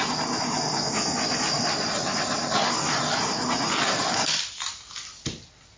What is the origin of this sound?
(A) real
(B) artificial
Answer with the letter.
A